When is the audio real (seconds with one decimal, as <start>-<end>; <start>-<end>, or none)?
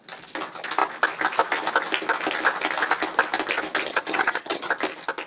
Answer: 0.0-3.9; 4.7-5.3